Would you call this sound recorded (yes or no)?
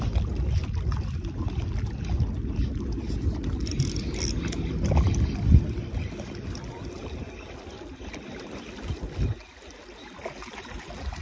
yes